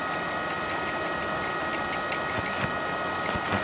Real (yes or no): yes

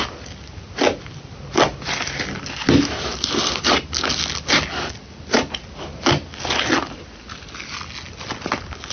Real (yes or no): yes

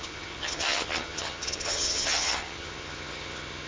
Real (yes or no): no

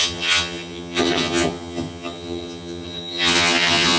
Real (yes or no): no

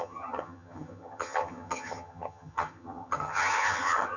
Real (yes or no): no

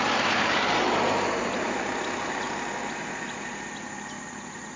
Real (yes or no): yes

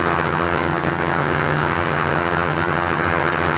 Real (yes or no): no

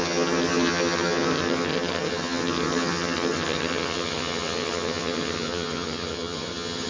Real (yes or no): no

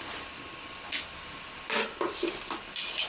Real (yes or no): yes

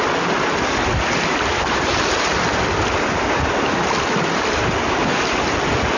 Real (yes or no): yes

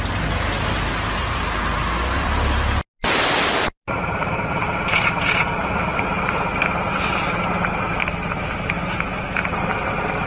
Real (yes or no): yes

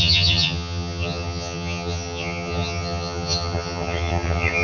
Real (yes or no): no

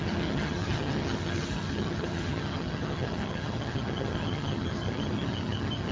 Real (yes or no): no